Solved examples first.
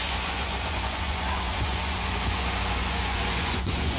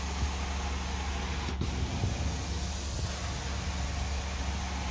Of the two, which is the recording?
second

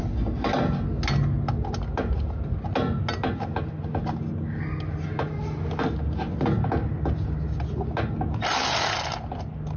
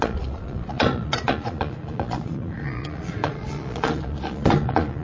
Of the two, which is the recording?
first